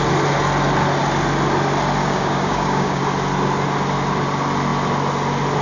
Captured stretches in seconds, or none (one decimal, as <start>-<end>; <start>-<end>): 0.0-2.0; 3.0-5.6